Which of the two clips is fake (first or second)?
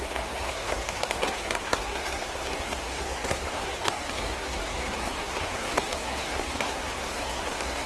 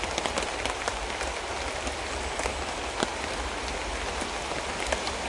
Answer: first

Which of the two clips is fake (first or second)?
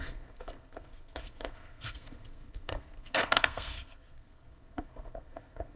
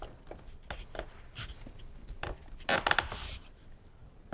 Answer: first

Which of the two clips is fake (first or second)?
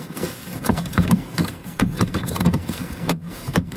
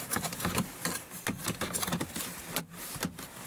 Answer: first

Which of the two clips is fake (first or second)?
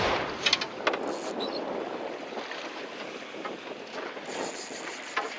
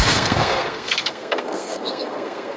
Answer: second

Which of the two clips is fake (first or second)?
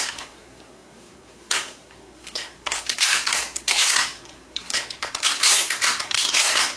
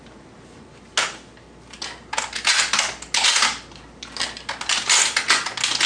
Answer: first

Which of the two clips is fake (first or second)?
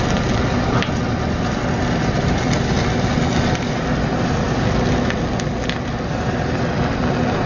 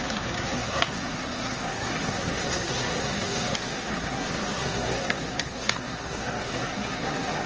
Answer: second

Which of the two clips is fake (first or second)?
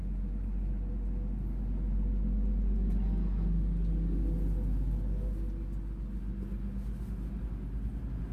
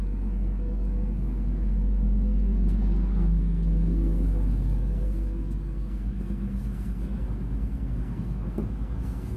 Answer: second